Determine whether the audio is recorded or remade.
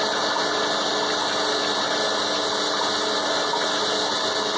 recorded